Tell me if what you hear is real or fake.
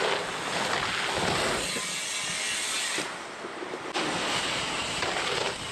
real